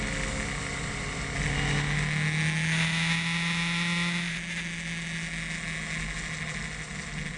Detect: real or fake real